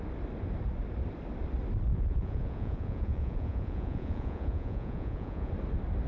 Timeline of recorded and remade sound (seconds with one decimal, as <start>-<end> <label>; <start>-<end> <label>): 0.0-1.9 recorded; 1.9-5.5 remade; 5.5-6.1 recorded